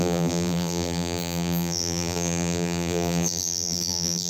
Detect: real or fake fake